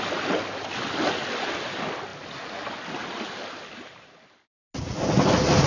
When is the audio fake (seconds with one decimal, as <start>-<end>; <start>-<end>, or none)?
none